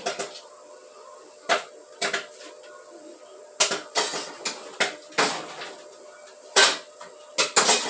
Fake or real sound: real